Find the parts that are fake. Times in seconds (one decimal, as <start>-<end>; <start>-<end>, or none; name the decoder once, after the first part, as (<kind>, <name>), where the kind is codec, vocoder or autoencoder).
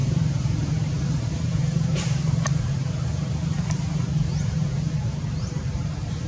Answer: 0.0-6.3 (vocoder, BigVGAN v2)